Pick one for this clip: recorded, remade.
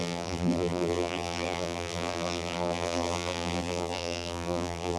remade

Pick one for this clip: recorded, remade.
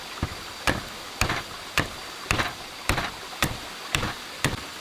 recorded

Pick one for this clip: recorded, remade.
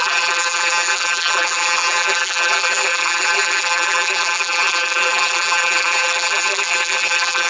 remade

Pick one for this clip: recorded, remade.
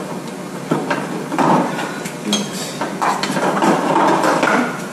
recorded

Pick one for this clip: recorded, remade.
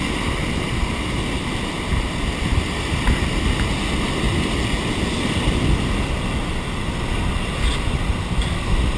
recorded